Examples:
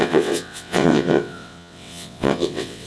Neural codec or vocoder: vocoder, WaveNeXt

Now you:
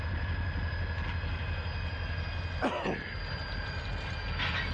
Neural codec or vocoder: none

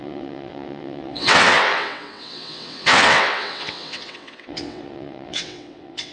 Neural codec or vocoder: vocoder, WaveNeXt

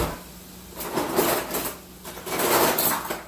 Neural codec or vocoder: none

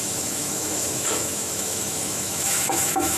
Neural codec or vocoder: autoencoder, DAC-VAE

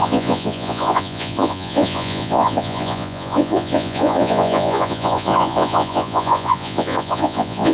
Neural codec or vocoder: vocoder, Vocos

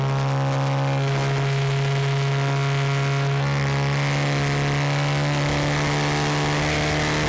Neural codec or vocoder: none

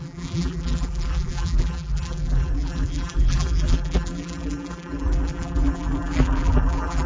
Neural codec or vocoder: vocoder, BigVGAN v2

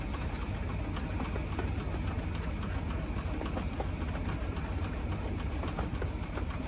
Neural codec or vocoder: none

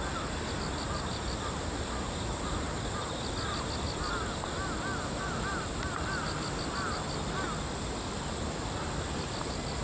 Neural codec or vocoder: none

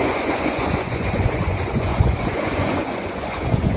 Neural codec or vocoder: vocoder, Vocos